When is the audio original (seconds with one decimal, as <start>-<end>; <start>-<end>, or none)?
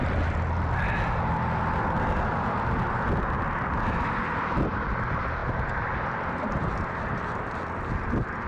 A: 0.0-8.5